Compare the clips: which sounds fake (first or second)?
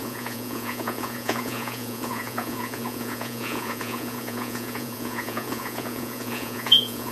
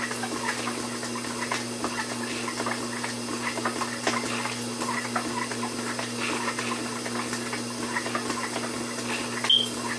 first